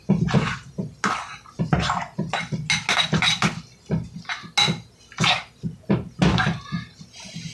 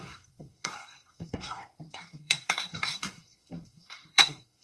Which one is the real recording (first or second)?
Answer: first